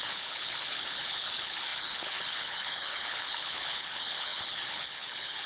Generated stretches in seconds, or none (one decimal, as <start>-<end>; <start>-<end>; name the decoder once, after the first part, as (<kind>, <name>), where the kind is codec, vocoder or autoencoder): 0.0-5.5 (codec, HILCodec)